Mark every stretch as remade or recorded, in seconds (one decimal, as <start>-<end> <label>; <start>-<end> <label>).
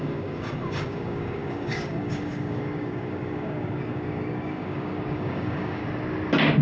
0.0-5.8 remade; 5.8-6.6 recorded